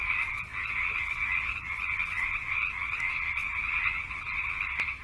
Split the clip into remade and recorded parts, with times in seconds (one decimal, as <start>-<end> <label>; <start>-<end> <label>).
0.0-5.0 recorded